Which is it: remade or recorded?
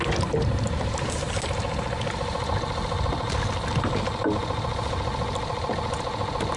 recorded